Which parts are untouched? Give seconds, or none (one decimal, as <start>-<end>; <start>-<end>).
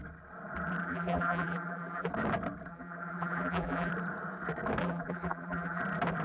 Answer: 0.0-0.8; 2.1-2.7; 3.9-4.8; 5.8-6.2